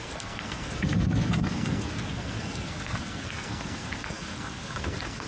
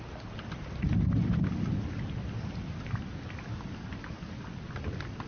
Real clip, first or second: second